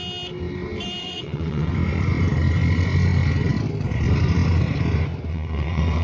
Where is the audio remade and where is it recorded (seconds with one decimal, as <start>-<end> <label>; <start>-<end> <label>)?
0.0-1.0 recorded; 1.0-1.7 remade; 1.7-5.3 recorded; 5.3-6.0 remade